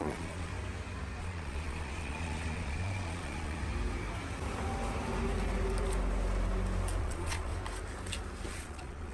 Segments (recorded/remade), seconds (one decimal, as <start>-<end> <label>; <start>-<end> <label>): 0.0-0.5 remade; 0.5-1.2 recorded; 1.2-3.6 remade; 3.6-7.0 recorded; 7.0-7.5 remade; 7.5-8.5 recorded; 8.5-9.1 remade